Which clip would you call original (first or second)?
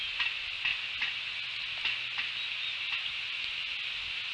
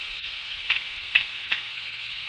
first